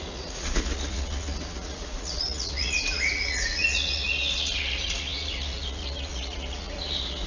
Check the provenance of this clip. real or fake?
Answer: fake